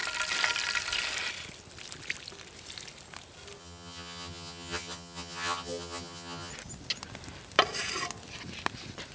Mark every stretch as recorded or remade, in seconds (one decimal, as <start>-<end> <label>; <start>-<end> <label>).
0.0-3.6 recorded; 3.6-6.5 remade; 6.5-9.1 recorded